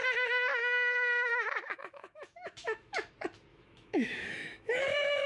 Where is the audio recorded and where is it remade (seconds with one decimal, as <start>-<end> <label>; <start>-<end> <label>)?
0.0-0.5 recorded; 0.5-3.1 remade; 3.1-3.5 recorded; 3.5-5.3 remade